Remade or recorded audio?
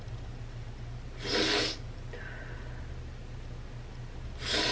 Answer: recorded